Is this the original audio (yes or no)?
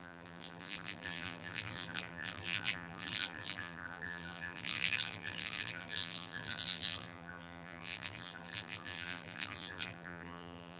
no